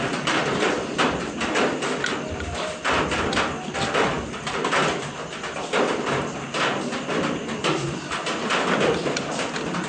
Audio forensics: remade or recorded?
recorded